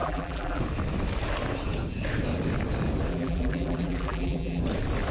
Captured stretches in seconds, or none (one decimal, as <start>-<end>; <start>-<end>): 0.6-3.1; 4.6-5.1